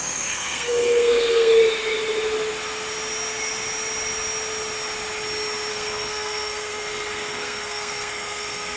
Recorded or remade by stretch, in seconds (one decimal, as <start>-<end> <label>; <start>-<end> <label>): 0.0-1.6 remade; 1.6-5.7 recorded; 5.7-8.8 remade